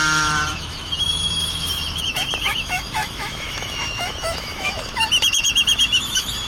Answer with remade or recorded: remade